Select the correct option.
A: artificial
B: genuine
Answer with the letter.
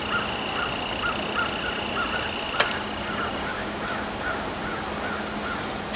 B